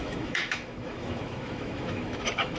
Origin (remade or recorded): remade